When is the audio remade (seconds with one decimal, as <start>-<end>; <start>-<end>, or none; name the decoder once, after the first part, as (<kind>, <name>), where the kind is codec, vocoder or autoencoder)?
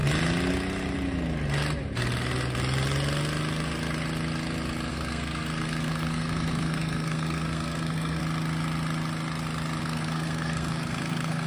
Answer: 4.9-8.2 (codec, SNAC); 9.8-11.5